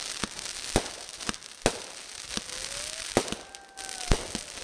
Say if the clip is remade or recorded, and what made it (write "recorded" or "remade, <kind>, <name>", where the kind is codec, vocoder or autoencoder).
recorded